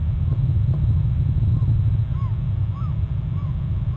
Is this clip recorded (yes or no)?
yes